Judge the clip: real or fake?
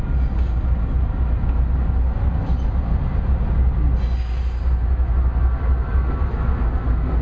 real